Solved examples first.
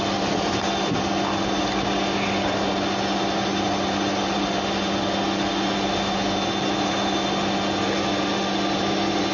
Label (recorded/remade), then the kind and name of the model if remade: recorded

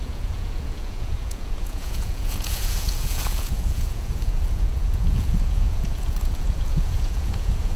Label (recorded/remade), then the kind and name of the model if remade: remade, vocoder, Vocos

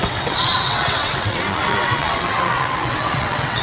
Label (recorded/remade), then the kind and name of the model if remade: remade, vocoder, WaveNeXt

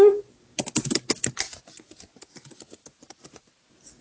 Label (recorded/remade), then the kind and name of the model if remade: recorded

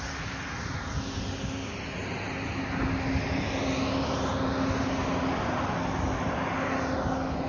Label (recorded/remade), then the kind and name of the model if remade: recorded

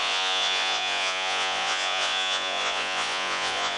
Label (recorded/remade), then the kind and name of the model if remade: remade, vocoder, Vocos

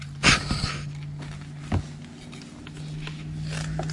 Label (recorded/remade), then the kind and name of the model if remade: recorded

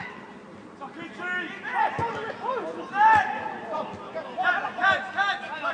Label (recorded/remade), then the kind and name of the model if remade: recorded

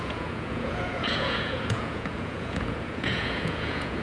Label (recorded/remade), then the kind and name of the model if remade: remade, vocoder, Vocos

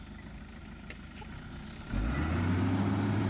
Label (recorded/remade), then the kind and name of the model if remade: recorded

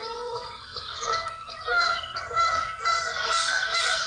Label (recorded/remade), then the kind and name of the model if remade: remade, codec, SNAC